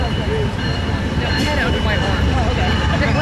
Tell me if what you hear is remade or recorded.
remade